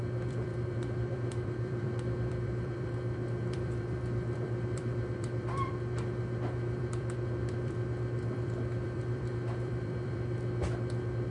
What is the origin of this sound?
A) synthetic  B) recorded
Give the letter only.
A